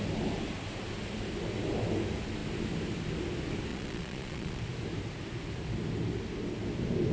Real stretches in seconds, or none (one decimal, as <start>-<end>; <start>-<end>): 0.0-3.7; 4.6-7.1